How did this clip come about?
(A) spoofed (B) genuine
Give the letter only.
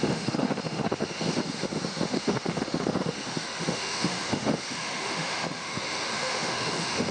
A